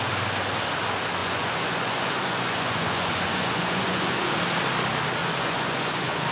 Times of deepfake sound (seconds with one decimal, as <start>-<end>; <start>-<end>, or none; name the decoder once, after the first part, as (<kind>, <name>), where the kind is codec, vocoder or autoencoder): 1.2-4.4 (vocoder, Vocos); 5.2-6.3